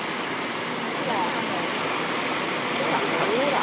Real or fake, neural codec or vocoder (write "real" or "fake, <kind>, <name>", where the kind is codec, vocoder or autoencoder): real